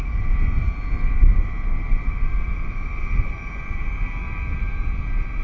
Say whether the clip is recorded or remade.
recorded